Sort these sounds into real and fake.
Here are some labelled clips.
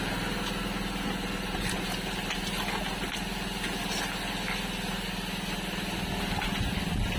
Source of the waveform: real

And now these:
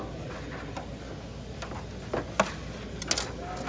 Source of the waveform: real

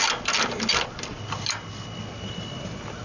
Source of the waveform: real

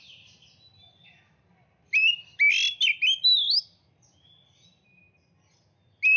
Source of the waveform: real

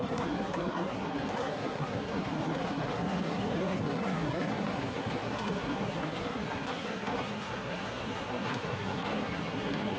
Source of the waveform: fake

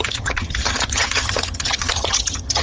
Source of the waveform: fake